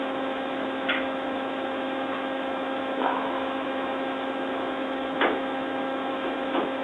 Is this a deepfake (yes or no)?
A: yes